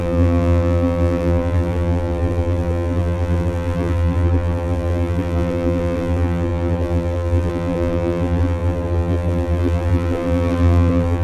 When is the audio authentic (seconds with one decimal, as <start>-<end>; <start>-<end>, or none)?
none